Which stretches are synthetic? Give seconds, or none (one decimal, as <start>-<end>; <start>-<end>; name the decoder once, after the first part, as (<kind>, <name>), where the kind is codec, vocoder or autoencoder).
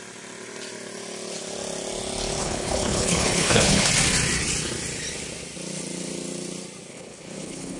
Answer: 2.4-3.9 (codec, HILCodec); 6.9-7.8